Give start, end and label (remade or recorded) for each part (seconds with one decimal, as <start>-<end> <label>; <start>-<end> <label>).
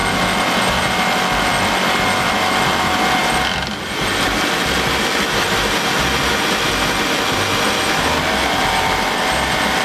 0.0-9.8 recorded